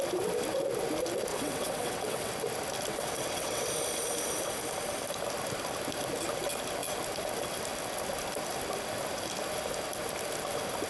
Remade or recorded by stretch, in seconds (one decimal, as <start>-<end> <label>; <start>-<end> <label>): 0.0-1.3 recorded; 1.3-2.3 remade; 2.3-2.9 recorded; 2.9-3.7 remade; 3.7-10.9 recorded